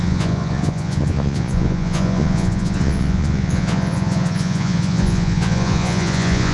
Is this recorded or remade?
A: remade